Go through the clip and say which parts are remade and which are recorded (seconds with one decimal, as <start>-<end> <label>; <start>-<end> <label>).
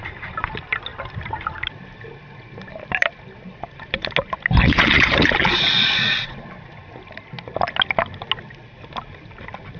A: 0.0-4.6 recorded; 4.6-6.4 remade; 6.4-9.8 recorded